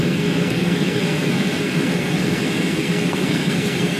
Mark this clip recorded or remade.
remade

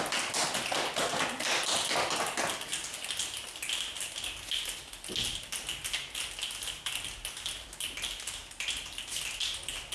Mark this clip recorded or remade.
recorded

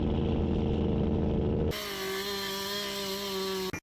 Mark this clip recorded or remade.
recorded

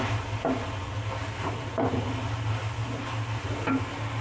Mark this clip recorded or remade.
recorded